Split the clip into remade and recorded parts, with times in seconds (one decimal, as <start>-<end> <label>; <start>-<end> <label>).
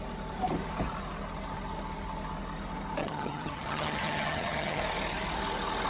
0.0-3.0 recorded; 3.0-4.8 remade; 4.8-5.9 recorded